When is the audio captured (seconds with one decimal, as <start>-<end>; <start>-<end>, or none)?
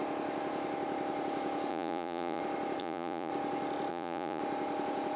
0.0-1.7; 2.4-2.8; 3.3-3.9; 4.4-5.2